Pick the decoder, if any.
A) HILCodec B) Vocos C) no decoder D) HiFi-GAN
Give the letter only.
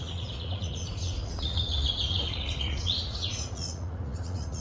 B